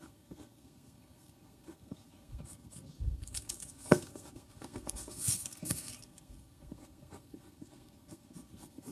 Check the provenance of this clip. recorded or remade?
remade